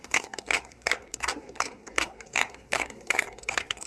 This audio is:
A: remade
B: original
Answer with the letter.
A